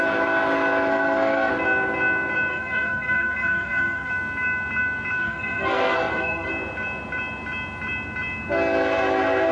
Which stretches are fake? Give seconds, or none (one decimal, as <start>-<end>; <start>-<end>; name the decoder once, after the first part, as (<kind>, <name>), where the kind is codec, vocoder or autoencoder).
0.9-1.5 (codec, SNAC); 2.5-4.1; 5.2-6.5

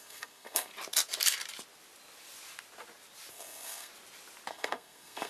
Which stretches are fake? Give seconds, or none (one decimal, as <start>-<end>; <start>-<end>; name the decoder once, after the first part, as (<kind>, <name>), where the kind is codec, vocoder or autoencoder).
0.0-0.7 (codec, SNAC); 3.3-3.9; 4.5-5.3

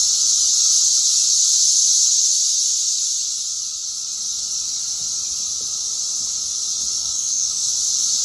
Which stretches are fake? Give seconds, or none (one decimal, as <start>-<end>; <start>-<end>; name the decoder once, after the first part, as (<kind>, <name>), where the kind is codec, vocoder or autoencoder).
7.0-7.7 (codec, DAC)

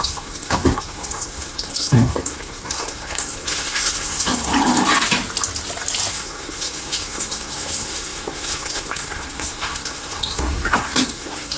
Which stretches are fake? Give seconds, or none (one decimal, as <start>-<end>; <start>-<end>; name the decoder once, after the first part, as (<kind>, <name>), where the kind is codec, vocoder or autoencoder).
0.0-4.5 (codec, SNAC); 6.1-11.6